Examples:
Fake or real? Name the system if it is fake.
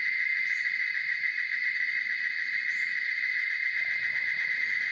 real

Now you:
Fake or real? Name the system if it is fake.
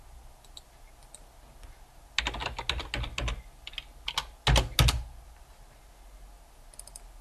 real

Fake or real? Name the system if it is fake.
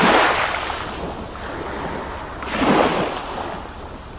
real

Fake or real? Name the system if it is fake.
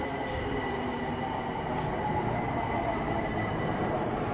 fake, vocoder, BigVGAN v2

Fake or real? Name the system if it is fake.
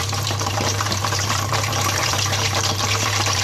fake, vocoder, BigVGAN v2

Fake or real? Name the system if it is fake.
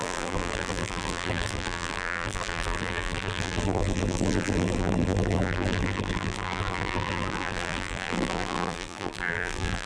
fake, vocoder, BigVGAN v2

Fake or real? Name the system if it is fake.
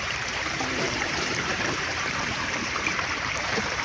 fake, vocoder, BigVGAN v2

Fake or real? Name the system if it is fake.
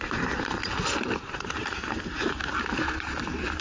fake, vocoder, BigVGAN v2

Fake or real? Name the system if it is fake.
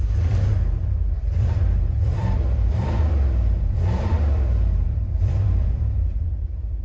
fake, vocoder, BigVGAN v2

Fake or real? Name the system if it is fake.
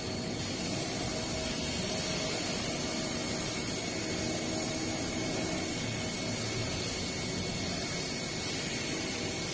real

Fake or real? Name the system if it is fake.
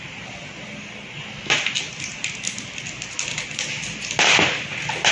real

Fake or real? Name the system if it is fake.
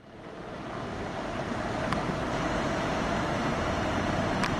fake, vocoder, BigVGAN v2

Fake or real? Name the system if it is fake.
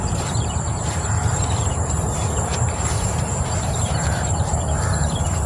fake, vocoder, BigVGAN v2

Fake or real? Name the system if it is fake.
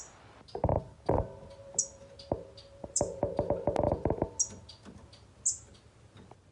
real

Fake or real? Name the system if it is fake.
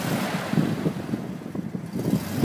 real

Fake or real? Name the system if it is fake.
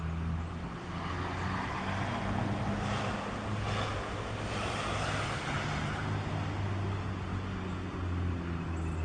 real